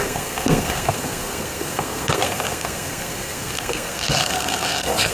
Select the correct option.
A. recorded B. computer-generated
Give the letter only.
B